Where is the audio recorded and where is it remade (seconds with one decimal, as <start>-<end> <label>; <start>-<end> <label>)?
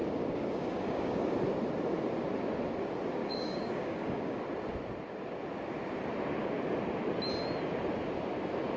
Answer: 0.0-1.3 remade; 1.3-3.2 recorded; 3.2-4.4 remade; 4.4-8.8 recorded